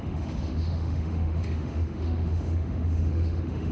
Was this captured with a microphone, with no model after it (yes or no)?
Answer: no